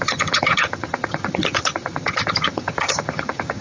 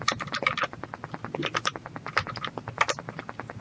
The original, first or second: second